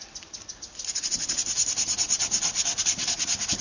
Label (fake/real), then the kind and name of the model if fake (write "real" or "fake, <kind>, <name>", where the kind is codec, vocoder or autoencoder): real